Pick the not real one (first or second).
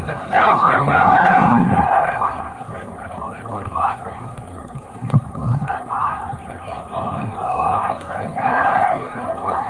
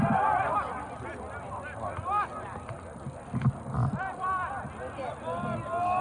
first